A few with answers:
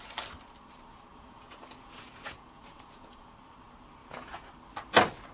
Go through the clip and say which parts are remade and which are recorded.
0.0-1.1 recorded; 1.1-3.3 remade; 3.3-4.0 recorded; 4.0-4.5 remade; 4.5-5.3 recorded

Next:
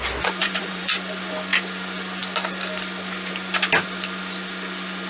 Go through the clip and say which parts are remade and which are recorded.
0.0-0.4 recorded; 0.4-0.9 remade; 0.9-5.1 recorded

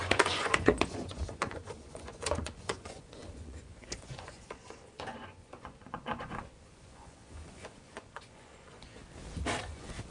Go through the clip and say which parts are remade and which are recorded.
0.0-9.0 remade; 9.0-9.6 recorded; 9.6-10.1 remade

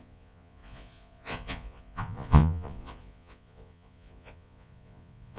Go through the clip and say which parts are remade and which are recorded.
0.0-5.4 remade

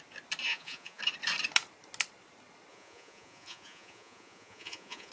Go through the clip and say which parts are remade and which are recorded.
0.0-0.5 recorded; 0.5-1.0 remade; 1.0-2.7 recorded; 2.7-5.1 remade